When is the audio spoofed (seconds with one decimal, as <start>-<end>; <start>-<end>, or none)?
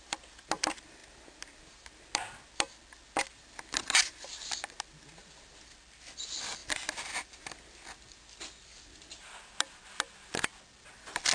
none